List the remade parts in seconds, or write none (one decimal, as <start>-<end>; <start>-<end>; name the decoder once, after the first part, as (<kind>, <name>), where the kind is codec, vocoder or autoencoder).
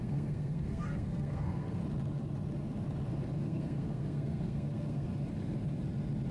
0.0-1.8 (codec, SNAC); 3.4-5.1